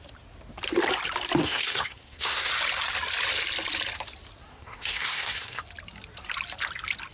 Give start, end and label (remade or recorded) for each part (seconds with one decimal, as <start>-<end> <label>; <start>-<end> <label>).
0.0-1.4 recorded; 1.4-2.5 remade; 2.5-4.5 recorded; 4.5-5.6 remade; 5.6-7.1 recorded